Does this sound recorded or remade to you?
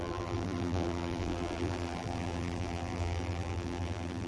remade